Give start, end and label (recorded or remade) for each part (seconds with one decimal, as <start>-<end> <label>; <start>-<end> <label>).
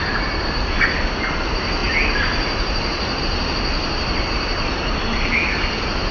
0.0-6.1 recorded